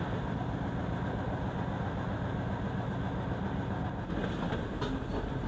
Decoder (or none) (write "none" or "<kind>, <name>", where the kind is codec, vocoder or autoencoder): none